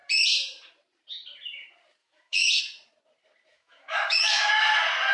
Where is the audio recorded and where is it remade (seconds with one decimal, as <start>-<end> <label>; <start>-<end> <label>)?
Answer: 0.0-2.0 recorded; 2.0-2.6 remade; 2.6-3.5 recorded; 3.5-4.5 remade; 4.5-5.1 recorded